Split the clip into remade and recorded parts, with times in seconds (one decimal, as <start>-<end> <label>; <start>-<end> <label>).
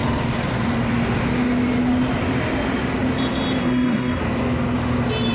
0.0-3.6 recorded; 3.6-4.2 remade; 4.2-5.3 recorded